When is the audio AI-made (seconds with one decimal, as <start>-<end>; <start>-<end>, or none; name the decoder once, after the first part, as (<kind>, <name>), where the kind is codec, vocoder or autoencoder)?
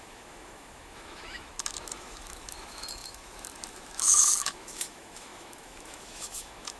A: 0.0-6.8 (autoencoder, DAC-VAE)